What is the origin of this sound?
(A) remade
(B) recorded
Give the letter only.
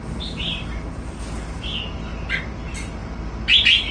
B